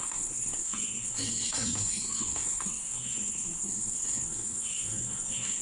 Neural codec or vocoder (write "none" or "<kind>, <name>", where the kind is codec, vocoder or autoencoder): codec, SNAC